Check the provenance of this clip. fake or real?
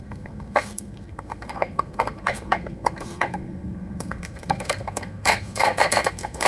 fake